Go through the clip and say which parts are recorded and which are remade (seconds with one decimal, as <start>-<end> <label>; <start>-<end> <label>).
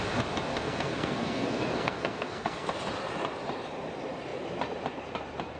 0.0-0.5 recorded; 0.5-2.7 remade; 2.7-5.6 recorded